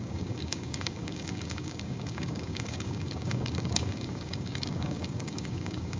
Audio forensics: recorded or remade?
remade